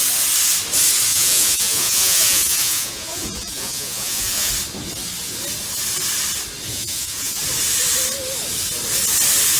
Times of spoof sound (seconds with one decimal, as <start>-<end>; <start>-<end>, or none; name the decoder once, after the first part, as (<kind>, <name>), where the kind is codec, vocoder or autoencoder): 1.1-4.5 (vocoder, Vocos); 6.7-7.4